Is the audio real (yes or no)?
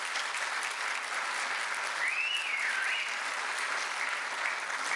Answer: yes